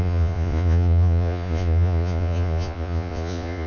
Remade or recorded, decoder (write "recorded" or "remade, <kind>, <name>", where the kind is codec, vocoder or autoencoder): remade, vocoder, Vocos